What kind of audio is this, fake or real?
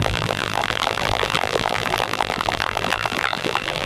fake